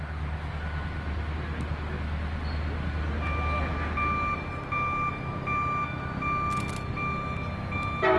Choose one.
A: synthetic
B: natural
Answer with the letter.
B